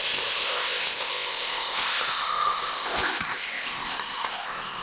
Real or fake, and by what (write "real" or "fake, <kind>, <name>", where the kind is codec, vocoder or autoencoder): fake, codec, ZipCodec